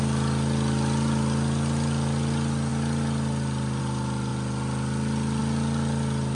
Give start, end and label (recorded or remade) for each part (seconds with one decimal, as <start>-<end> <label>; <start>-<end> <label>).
0.0-6.3 recorded